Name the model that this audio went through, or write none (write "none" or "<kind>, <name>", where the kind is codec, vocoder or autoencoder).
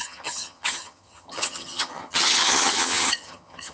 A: vocoder, HiFi-GAN